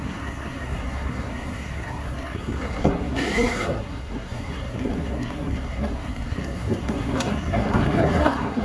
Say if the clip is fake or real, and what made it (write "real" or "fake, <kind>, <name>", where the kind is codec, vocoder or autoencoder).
fake, codec, SNAC